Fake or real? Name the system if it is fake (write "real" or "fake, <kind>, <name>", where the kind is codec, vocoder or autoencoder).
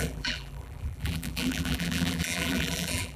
fake, vocoder, BigVGAN v2